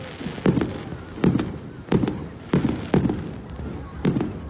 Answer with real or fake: real